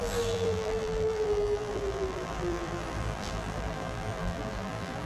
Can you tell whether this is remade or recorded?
remade